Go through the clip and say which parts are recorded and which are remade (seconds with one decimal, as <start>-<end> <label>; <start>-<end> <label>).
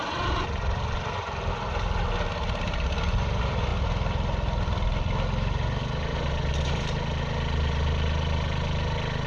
0.0-9.3 recorded